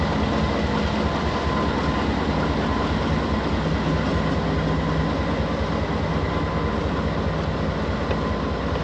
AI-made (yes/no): no